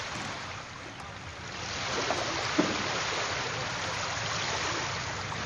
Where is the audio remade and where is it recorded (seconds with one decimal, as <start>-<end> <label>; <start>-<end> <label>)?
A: 0.0-5.5 recorded